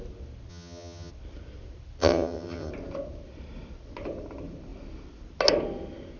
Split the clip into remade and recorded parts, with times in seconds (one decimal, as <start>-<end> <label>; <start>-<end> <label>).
0.0-0.5 recorded; 0.5-1.1 remade; 1.1-2.0 recorded; 2.0-2.7 remade; 2.7-6.2 recorded